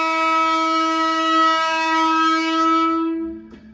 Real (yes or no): no